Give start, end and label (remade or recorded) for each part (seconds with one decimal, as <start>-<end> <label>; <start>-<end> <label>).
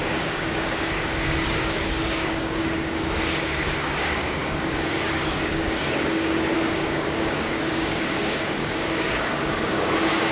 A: 0.0-10.3 remade